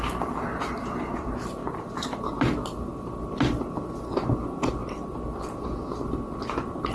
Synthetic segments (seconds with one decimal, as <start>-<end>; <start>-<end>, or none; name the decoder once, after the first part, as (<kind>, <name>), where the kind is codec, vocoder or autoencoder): none